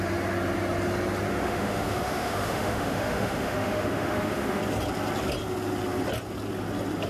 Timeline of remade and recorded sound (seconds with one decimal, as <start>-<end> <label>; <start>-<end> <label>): 0.0-1.3 recorded; 1.3-4.6 remade; 4.6-7.1 recorded